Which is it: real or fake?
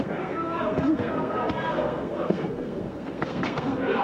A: fake